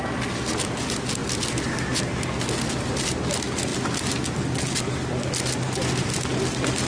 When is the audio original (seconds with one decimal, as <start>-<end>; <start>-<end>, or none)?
0.0-6.9